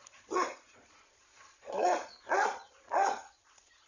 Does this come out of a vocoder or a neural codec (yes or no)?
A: yes